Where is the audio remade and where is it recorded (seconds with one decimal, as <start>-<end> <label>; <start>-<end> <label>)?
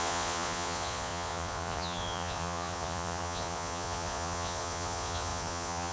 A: 0.0-5.9 remade